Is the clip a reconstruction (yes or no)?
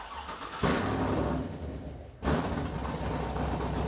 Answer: no